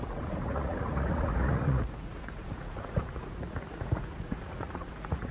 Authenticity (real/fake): fake